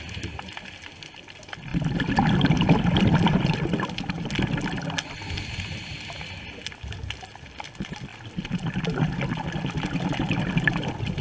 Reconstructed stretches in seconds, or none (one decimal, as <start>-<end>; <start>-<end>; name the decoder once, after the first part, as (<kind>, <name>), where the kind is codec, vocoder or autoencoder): none